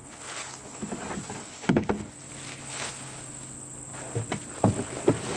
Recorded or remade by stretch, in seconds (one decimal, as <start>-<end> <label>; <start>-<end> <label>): 0.0-0.8 remade; 0.8-1.4 recorded; 1.4-2.1 remade; 2.1-2.5 recorded; 2.5-3.2 remade; 3.2-5.4 recorded